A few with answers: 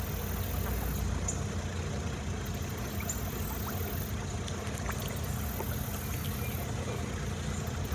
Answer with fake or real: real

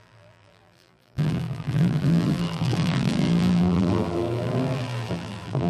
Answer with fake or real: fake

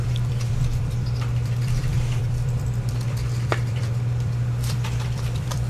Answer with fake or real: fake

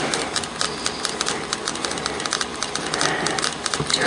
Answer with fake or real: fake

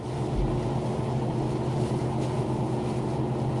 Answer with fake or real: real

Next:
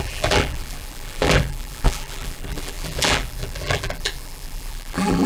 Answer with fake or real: fake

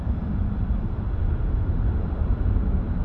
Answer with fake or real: fake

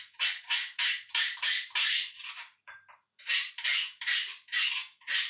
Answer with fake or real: fake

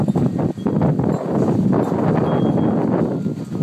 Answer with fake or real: real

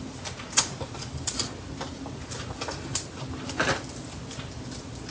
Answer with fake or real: real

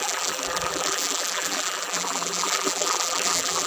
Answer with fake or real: fake